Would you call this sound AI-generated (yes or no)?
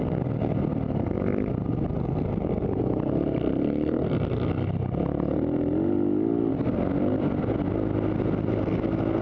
no